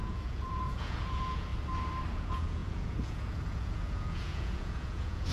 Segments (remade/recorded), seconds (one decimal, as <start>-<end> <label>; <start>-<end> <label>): 0.0-1.5 remade; 1.5-2.1 recorded; 2.1-5.3 remade